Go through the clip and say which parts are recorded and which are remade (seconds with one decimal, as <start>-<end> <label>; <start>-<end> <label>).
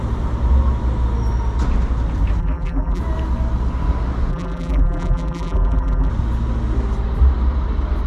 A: 0.0-2.4 recorded; 2.4-3.0 remade; 3.0-4.3 recorded; 4.3-6.1 remade; 6.1-8.1 recorded